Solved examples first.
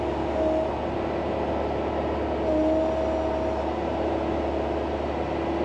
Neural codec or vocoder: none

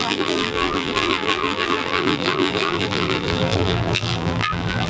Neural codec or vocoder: vocoder, BigVGAN v2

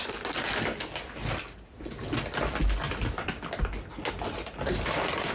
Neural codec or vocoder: none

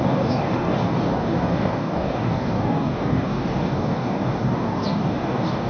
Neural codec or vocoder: codec, DAC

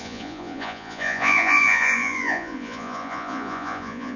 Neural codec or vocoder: vocoder, Vocos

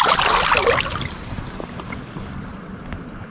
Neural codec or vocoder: none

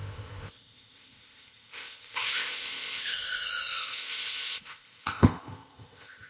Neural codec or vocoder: codec, ZipCodec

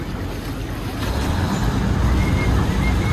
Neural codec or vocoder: none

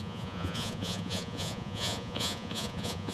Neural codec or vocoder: vocoder, Vocos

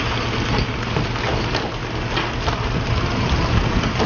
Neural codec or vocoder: none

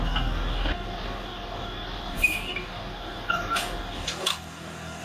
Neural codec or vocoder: codec, DAC